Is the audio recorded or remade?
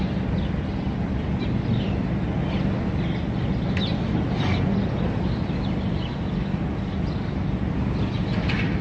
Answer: recorded